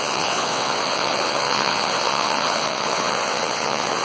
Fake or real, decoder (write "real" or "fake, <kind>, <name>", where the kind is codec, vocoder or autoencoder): fake, vocoder, WaveNeXt